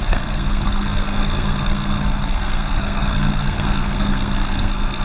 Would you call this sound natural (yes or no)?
no